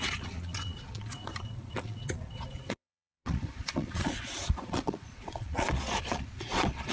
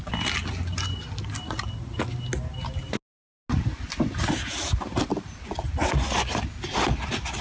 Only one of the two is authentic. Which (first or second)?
second